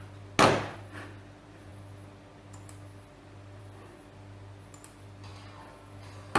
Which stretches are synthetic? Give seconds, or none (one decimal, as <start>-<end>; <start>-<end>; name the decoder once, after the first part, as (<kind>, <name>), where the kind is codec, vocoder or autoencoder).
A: none